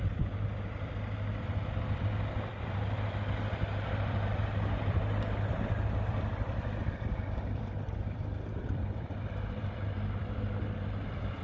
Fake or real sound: fake